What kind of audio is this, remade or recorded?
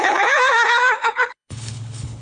remade